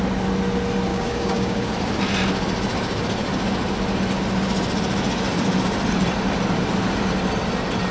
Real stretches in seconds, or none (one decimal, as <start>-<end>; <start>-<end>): 0.0-0.9; 1.7-7.9